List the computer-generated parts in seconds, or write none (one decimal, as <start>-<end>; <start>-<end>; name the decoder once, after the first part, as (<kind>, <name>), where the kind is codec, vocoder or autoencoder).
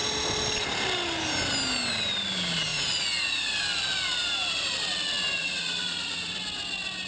2.7-3.6 (vocoder, Vocos); 5.4-6.3